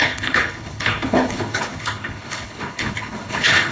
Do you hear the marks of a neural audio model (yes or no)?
yes